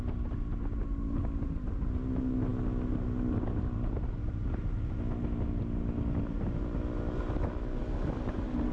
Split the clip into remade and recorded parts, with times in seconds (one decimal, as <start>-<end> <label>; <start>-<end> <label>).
0.0-8.7 recorded